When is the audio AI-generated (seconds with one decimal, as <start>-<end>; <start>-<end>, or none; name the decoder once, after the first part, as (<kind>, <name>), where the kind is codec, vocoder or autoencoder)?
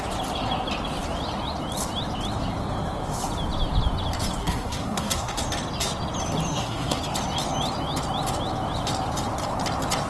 4.4-5.4 (codec, SNAC); 6.5-7.0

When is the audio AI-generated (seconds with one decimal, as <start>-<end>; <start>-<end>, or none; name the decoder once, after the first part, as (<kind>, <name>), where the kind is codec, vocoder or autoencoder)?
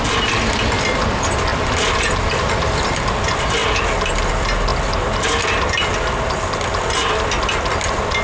none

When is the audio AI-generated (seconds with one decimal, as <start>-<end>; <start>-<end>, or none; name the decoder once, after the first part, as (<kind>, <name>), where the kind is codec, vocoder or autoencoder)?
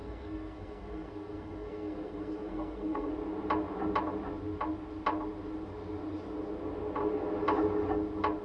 0.0-3.1 (codec, SNAC)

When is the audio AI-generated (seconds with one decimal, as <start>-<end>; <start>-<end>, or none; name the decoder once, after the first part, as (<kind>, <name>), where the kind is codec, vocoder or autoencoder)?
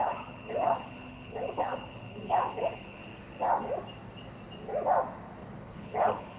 0.0-3.0 (codec, HILCodec); 5.6-6.4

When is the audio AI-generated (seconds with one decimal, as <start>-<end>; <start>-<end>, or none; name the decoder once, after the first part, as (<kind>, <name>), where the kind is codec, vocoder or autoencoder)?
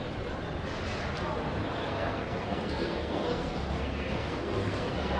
1.8-5.2 (codec, SNAC)